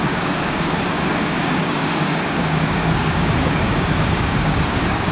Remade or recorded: remade